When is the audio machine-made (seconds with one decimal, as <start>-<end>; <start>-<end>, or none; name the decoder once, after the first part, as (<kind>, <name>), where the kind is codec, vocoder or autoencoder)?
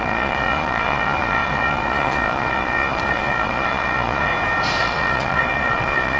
0.0-4.3 (vocoder, Vocos); 4.8-6.2